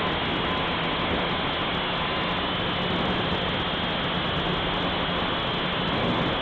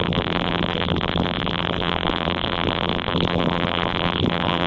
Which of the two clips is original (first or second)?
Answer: first